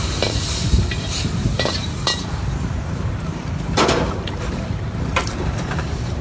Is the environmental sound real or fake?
fake